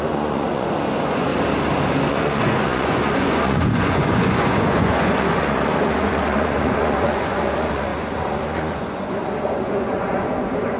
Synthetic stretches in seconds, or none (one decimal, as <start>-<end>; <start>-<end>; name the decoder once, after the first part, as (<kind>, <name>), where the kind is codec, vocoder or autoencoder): 0.0-1.3 (vocoder, Vocos); 2.1-10.8